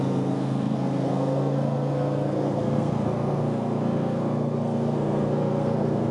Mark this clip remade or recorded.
remade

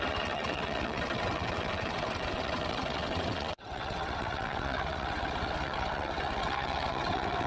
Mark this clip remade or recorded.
remade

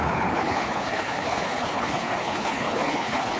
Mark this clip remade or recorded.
remade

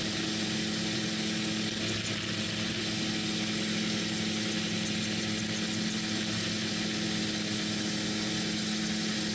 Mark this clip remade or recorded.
recorded